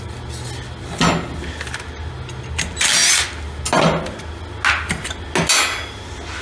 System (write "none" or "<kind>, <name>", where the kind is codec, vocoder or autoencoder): none